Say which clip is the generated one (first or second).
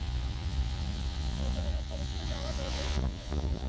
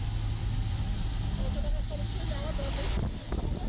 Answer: first